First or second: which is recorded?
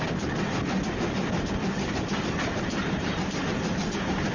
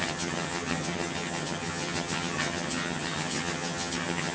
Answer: first